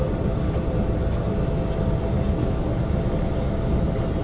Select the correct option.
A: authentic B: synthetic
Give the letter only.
A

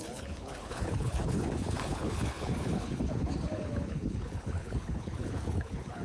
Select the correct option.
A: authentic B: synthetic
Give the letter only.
B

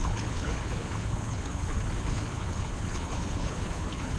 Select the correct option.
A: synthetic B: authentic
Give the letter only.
A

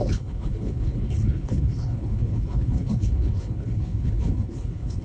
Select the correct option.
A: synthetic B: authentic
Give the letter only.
A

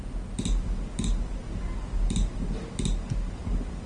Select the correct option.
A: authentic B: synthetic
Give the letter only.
A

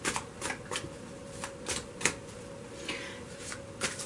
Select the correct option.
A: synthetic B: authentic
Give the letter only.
B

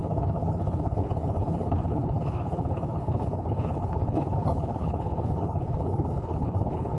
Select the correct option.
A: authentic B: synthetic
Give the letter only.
B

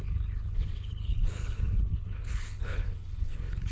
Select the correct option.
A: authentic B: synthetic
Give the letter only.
B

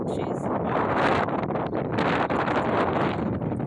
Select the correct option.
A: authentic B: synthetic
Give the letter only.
A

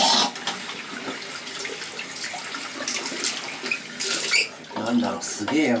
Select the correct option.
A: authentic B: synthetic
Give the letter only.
A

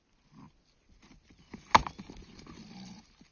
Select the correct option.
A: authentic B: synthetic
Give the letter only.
A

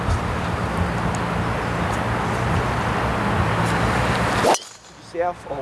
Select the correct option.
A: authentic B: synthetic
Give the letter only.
A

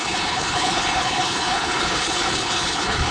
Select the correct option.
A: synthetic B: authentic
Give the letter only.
A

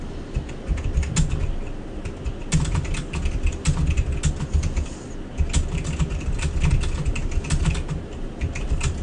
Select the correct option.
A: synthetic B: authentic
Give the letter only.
B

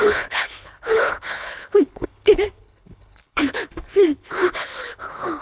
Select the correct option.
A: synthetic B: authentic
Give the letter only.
A